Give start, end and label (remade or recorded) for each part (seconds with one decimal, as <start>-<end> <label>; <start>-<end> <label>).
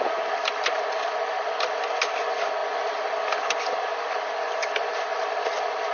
0.0-5.9 recorded